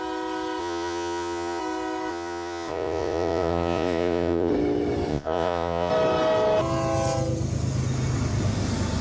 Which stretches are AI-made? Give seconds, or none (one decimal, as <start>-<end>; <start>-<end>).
0.6-1.6; 2.1-4.5; 5.1-5.9